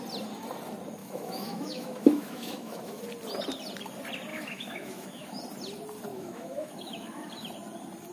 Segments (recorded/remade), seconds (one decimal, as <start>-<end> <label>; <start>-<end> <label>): 0.0-1.0 recorded; 1.0-3.0 remade; 3.0-4.3 recorded; 4.3-5.4 remade; 5.4-6.1 recorded; 6.1-7.3 remade; 7.3-8.1 recorded